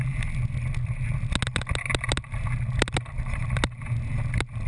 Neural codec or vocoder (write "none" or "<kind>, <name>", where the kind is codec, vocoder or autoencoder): none